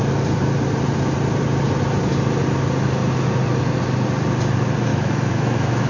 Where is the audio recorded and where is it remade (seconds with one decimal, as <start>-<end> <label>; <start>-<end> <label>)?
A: 0.0-4.9 recorded; 4.9-5.9 remade